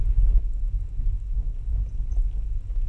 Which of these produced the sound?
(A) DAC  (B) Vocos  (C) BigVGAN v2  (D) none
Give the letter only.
D